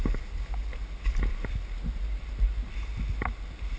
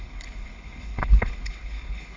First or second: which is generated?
second